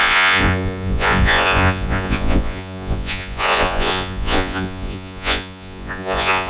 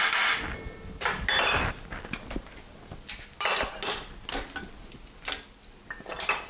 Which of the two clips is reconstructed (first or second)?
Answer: first